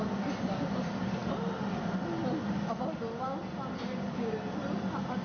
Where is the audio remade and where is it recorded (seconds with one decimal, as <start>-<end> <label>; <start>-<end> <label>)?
0.0-5.2 recorded